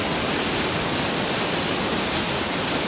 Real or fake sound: real